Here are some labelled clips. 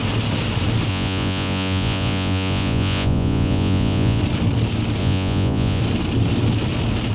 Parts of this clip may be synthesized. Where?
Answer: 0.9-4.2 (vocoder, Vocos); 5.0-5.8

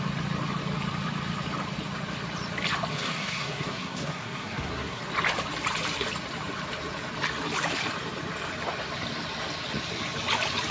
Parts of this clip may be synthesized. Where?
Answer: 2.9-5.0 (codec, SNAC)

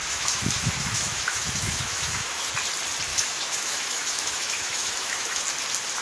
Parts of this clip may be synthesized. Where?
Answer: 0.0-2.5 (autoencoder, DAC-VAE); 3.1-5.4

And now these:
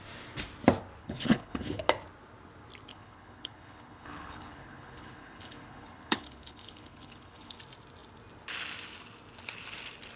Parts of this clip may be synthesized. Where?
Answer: 1.0-1.8 (codec, HILCodec); 2.9-7.6

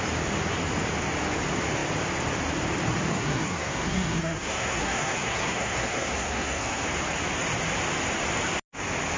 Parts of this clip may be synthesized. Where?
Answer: 3.1-6.8 (codec, SNAC)

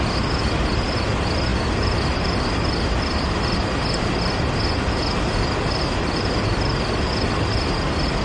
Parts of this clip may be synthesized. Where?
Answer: none

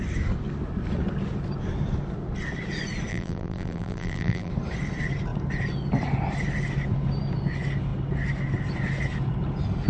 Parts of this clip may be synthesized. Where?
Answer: 3.1-4.5 (vocoder, BigVGAN v2)